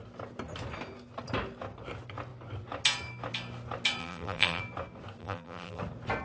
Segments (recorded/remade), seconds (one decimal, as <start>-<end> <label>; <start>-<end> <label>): 0.0-4.0 recorded; 4.0-4.6 remade; 4.6-5.2 recorded; 5.2-5.8 remade; 5.8-6.2 recorded